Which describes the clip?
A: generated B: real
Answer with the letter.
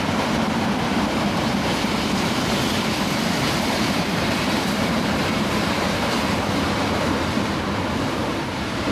A